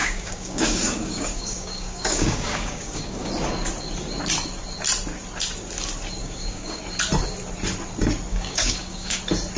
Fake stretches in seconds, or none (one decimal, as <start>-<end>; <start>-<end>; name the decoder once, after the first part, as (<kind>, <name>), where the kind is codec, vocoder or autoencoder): 0.0-3.3 (codec, DAC); 6.2-6.8; 8.3-9.2